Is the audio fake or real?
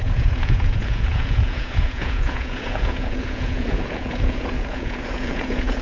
fake